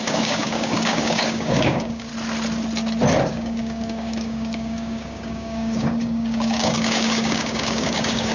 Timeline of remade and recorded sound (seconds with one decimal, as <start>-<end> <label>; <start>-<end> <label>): 0.0-2.1 remade; 2.1-3.3 recorded; 3.3-8.3 remade

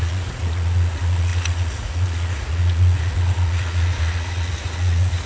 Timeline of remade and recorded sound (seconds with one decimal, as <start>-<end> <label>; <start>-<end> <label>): 0.0-5.3 remade

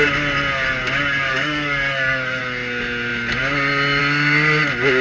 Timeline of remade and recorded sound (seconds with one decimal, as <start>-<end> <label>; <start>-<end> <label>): 0.0-1.3 recorded; 1.3-2.4 remade; 2.4-5.0 recorded

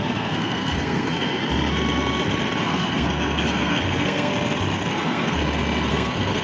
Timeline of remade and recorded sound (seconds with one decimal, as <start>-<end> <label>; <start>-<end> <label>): 0.0-1.4 remade; 1.4-2.6 recorded; 2.6-4.3 remade; 4.3-4.9 recorded; 4.9-5.4 remade; 5.4-5.9 recorded; 5.9-6.4 remade